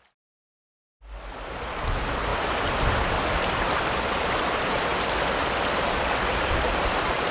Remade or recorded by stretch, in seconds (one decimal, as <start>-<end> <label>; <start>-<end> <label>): 0.0-0.4 remade; 0.4-1.8 recorded; 1.8-2.3 remade; 2.3-2.9 recorded; 2.9-4.9 remade; 4.9-6.5 recorded; 6.5-7.3 remade